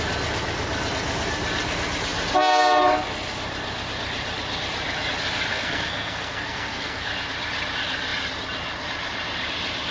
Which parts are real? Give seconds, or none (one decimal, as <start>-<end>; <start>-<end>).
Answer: 0.0-5.5; 7.1-9.9